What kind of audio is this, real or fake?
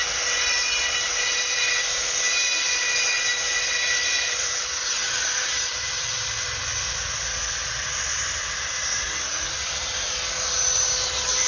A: fake